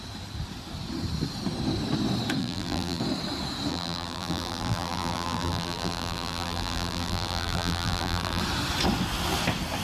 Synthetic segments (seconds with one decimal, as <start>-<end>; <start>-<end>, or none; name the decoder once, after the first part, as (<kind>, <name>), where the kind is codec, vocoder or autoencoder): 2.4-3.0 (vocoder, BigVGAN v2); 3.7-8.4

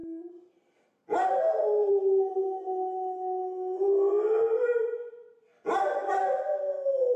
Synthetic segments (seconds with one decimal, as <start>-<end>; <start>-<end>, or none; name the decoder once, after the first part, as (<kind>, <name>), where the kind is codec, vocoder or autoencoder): none

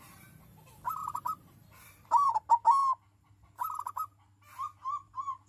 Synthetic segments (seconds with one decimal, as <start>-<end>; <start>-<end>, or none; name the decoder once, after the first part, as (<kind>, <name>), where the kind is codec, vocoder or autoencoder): 1.0-2.3 (vocoder, BigVGAN v2)